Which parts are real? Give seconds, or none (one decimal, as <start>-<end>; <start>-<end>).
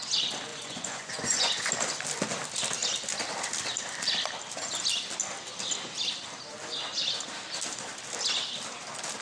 0.0-0.5; 1.7-9.2